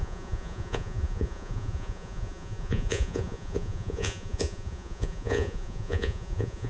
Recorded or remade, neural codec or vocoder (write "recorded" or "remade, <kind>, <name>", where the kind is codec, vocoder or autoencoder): remade, vocoder, Vocos